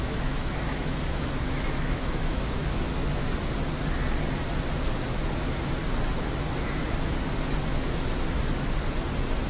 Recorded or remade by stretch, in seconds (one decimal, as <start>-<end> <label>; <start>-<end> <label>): 0.0-3.2 remade; 3.2-6.1 recorded; 6.1-6.8 remade; 6.8-9.5 recorded